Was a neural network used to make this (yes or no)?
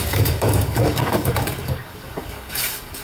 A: yes